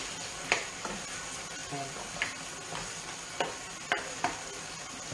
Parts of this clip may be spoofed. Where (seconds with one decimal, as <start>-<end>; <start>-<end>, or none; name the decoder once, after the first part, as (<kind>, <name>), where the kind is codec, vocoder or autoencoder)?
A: none